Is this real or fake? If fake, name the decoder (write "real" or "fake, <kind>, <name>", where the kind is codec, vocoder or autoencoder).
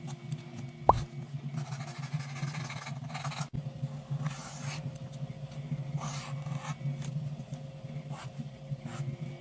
real